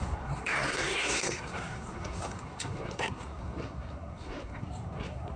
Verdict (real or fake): fake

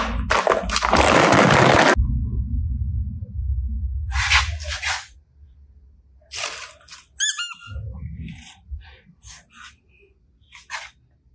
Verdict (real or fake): real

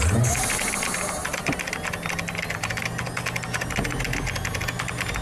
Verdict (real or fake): real